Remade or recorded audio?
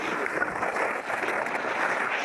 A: recorded